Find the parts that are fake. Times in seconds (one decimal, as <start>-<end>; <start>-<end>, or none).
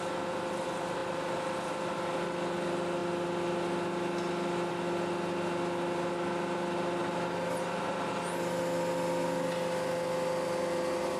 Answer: none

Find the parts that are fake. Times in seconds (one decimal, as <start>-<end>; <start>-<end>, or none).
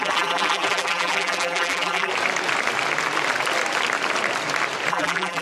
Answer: 0.0-2.1; 4.9-5.4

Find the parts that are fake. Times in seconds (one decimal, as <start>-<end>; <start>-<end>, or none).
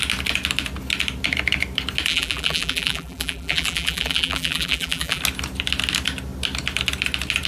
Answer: 2.1-5.2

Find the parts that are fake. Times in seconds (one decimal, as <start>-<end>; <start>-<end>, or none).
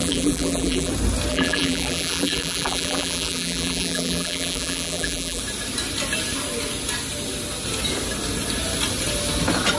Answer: 0.0-0.9; 1.3-5.4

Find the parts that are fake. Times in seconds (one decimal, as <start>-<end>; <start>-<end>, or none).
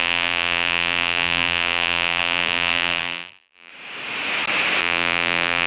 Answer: 0.0-3.7; 4.8-5.7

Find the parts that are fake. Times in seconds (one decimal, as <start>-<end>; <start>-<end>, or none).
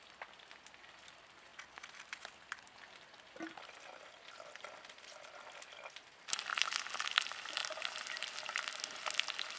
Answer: none